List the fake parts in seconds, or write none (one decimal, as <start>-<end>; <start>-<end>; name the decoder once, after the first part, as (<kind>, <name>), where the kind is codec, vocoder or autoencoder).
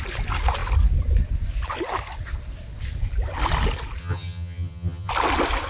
4.0-5.1 (vocoder, HiFi-GAN)